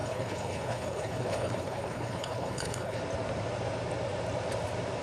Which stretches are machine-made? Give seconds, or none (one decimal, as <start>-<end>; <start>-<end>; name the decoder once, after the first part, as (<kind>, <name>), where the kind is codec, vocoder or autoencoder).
0.0-3.0 (codec, HILCodec)